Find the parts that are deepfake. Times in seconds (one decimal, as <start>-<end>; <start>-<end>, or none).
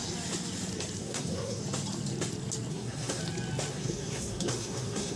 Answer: 1.0-1.6; 2.7-3.2; 3.7-5.2